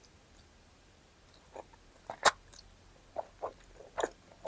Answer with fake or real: real